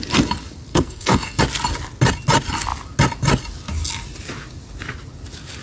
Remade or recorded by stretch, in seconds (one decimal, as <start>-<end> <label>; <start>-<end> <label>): 0.0-0.7 recorded; 0.7-1.4 remade; 1.4-5.6 recorded